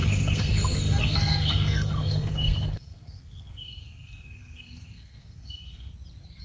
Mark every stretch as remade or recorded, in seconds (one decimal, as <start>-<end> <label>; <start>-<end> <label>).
0.0-5.9 remade; 5.9-6.4 recorded